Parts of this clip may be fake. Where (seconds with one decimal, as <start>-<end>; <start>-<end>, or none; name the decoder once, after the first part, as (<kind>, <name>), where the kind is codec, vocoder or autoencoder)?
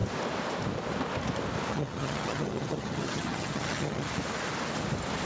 1.7-4.1 (vocoder, HiFi-GAN)